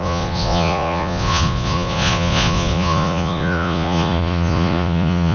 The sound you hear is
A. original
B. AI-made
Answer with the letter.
B